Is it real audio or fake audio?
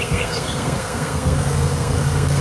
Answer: fake